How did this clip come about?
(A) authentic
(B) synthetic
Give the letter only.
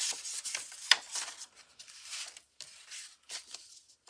A